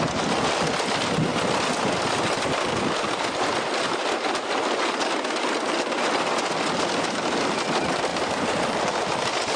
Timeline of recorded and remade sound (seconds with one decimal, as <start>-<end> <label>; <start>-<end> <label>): 0.0-8.1 recorded; 8.1-9.6 remade

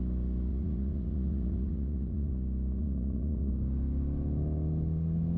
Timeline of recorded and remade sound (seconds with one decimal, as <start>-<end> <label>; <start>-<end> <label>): 0.0-0.5 recorded; 0.5-2.3 remade; 2.3-2.8 recorded; 2.8-3.5 remade; 3.5-5.4 recorded

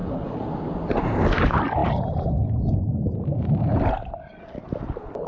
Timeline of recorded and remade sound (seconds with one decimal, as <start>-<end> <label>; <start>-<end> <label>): 0.0-0.5 remade; 0.5-5.3 recorded

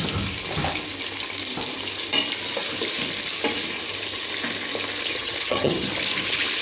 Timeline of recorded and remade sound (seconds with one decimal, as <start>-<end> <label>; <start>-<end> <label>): 0.0-5.1 recorded; 5.1-5.9 remade; 5.9-6.6 recorded

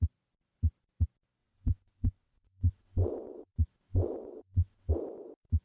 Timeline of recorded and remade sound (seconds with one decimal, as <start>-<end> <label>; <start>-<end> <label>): 0.0-1.4 recorded; 1.4-3.5 remade; 3.5-3.9 recorded; 3.9-4.9 remade; 4.9-5.6 recorded

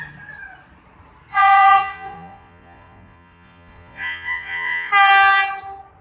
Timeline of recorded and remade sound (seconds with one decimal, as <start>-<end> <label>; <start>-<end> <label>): 0.0-1.3 recorded; 1.3-4.9 remade; 4.9-6.0 recorded

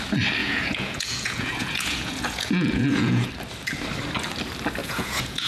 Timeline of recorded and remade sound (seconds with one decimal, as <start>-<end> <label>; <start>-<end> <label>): 0.0-0.4 recorded; 0.4-3.3 remade; 3.3-4.8 recorded; 4.8-5.5 remade

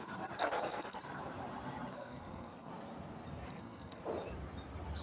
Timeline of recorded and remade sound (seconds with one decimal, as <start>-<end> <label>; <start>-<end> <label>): 0.0-0.4 recorded; 0.4-1.0 remade; 1.0-1.9 recorded; 1.9-2.7 remade; 2.7-3.5 recorded; 3.5-4.0 remade; 4.0-5.0 recorded